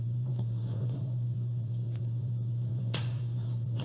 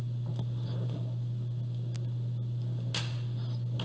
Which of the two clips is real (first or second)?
second